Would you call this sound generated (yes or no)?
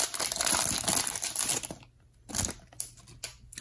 no